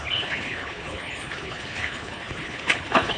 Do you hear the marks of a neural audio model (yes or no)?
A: yes